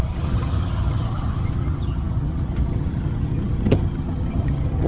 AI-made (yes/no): yes